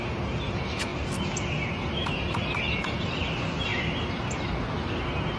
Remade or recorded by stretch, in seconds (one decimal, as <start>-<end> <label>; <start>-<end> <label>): 0.0-5.4 recorded